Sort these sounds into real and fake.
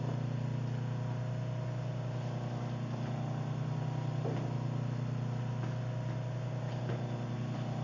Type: real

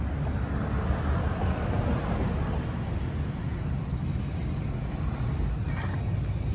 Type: real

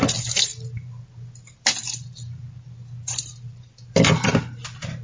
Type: real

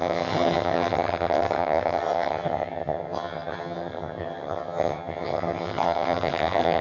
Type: fake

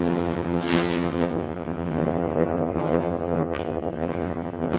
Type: fake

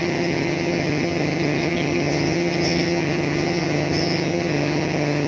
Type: fake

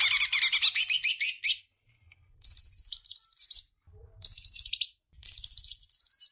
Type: real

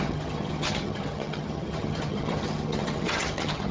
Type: fake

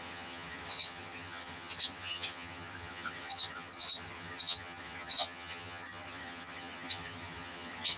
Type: fake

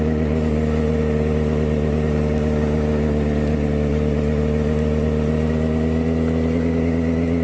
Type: real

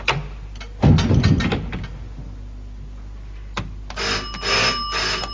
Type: real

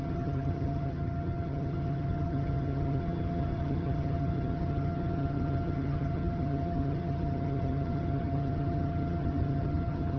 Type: fake